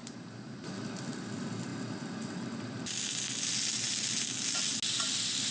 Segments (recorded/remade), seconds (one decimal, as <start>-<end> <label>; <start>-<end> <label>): 0.0-0.7 remade; 0.7-5.5 recorded